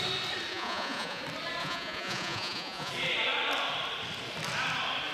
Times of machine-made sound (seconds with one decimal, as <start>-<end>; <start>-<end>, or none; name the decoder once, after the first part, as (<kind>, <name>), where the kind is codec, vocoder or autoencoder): 0.5-1.2 (vocoder, Vocos); 1.6-2.9